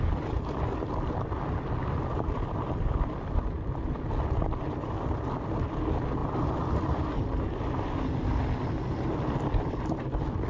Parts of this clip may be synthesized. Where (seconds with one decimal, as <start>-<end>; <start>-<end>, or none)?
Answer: none

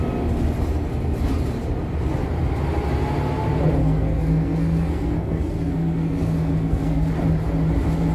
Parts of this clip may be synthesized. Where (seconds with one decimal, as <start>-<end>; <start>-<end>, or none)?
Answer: 3.8-7.1

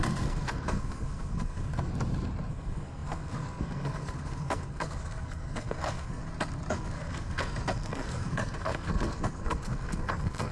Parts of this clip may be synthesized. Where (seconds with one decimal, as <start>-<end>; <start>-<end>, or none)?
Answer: 0.0-1.9; 2.5-6.2; 6.7-10.5

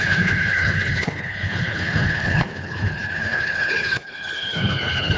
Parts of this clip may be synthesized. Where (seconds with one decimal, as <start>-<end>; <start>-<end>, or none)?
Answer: 0.0-5.2

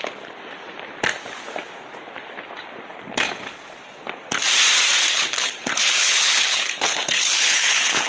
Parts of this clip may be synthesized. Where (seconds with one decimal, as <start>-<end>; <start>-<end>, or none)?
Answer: 5.0-8.1

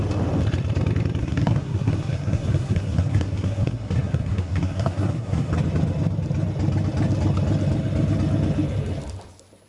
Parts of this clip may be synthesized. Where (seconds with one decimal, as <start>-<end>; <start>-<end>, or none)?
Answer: 1.2-5.5

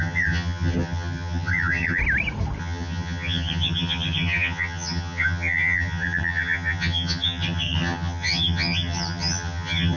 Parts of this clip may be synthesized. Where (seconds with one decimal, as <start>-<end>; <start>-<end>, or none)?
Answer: 0.0-2.0; 2.6-10.0

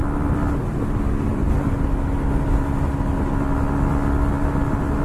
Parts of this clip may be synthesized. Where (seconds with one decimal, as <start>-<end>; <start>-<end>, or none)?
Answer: none